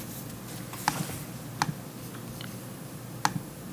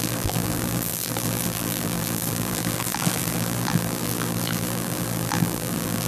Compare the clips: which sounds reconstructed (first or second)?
second